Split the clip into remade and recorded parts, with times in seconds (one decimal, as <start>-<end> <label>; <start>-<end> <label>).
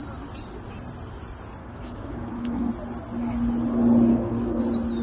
0.0-1.6 recorded; 1.6-2.7 remade; 2.7-4.1 recorded; 4.1-4.6 remade; 4.6-5.0 recorded